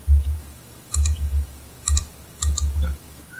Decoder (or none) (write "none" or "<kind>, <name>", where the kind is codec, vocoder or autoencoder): autoencoder, DAC-VAE